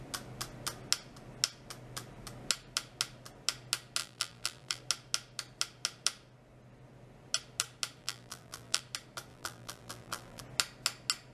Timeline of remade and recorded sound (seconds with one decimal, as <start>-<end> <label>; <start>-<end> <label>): 0.0-4.0 recorded; 4.0-4.8 remade; 4.8-8.0 recorded; 8.0-8.8 remade; 8.8-9.3 recorded; 9.3-10.4 remade; 10.4-11.3 recorded